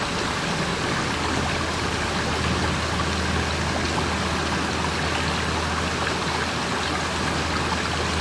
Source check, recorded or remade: recorded